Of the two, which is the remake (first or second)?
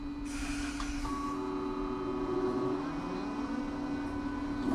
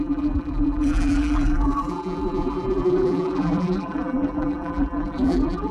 second